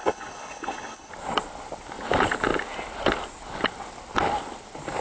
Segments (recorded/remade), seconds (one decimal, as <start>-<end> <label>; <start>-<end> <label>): 0.0-1.1 remade; 1.1-5.0 recorded